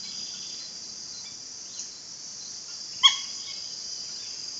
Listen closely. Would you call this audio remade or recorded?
recorded